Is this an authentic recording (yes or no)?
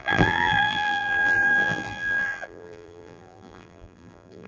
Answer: no